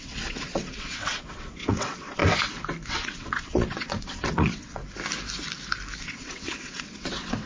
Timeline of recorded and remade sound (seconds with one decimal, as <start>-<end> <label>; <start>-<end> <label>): 0.0-2.2 remade; 2.2-2.9 recorded; 2.9-4.8 remade; 4.8-6.0 recorded; 6.0-7.5 remade